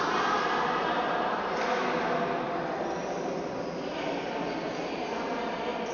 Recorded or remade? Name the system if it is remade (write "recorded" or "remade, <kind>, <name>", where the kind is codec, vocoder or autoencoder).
recorded